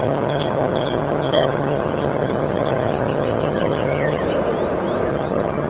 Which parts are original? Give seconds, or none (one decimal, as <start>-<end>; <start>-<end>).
4.2-5.1